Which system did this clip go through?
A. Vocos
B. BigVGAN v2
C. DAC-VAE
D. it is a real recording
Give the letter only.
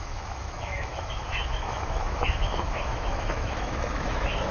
C